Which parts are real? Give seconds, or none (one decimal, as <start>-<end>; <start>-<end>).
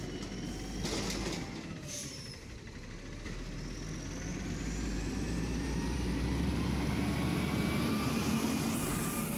0.0-1.7; 2.7-4.3